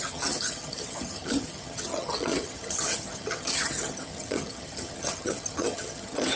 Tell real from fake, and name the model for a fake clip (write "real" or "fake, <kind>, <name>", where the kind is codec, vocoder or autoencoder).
fake, vocoder, HiFi-GAN